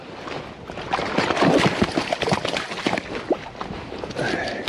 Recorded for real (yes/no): yes